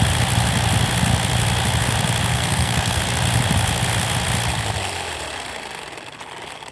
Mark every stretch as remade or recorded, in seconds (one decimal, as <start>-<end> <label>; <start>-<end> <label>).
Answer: 0.0-2.3 recorded; 2.3-3.0 remade; 3.0-6.7 recorded